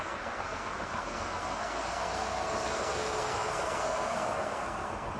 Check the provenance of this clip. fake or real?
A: fake